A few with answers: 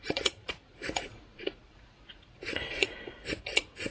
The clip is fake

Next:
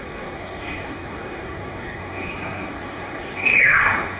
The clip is fake